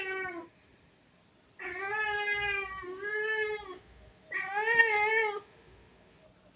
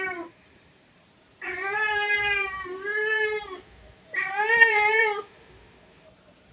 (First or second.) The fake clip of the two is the second